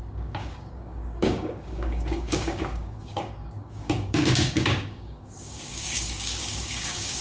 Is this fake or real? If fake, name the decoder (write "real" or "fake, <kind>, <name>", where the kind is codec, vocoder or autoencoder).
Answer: fake, codec, DAC